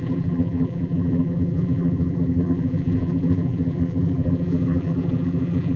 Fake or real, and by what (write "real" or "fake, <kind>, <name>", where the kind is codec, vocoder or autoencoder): fake, vocoder, BigVGAN v2